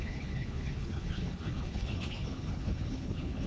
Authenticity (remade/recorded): remade